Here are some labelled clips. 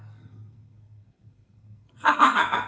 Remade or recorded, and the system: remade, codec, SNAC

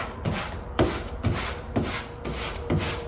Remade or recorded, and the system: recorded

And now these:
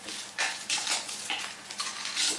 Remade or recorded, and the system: remade, vocoder, Vocos